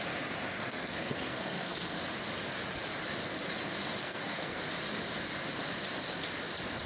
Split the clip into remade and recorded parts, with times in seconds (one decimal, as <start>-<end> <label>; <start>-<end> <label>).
0.0-0.5 recorded; 0.5-2.0 remade; 2.0-4.0 recorded; 4.0-4.6 remade; 4.6-6.9 recorded